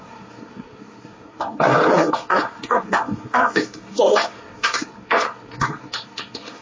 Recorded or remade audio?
remade